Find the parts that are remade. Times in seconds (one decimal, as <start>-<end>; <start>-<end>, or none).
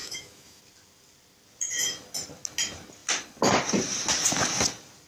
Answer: 0.0-0.6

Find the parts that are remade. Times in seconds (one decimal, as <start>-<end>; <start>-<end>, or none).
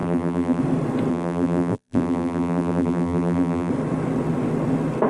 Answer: 0.0-0.6; 1.1-3.7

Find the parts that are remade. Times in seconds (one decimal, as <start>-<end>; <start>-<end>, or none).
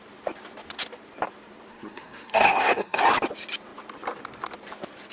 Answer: 1.7-3.0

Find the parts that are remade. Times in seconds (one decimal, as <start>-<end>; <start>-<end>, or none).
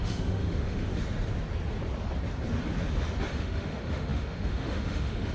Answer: 0.0-0.9; 3.3-5.3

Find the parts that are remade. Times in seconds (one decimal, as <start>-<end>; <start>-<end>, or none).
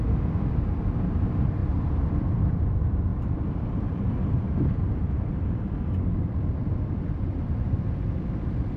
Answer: 1.6-2.5; 3.1-4.2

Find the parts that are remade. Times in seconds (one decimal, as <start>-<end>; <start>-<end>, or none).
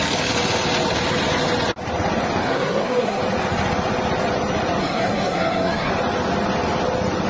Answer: 2.4-3.2; 4.8-5.9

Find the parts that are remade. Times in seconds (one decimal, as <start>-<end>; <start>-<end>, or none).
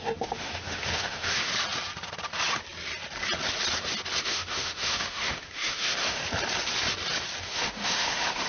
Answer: 0.0-1.5; 4.2-6.2; 7.4-8.5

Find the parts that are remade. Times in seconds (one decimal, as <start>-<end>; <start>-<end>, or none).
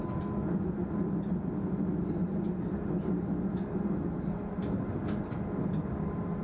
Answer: none